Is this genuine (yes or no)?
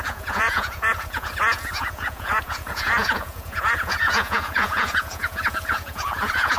no